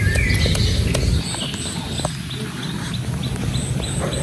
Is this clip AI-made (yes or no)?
no